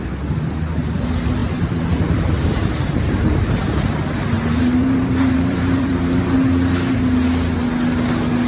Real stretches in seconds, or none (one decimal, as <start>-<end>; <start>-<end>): 0.0-1.4; 6.2-8.5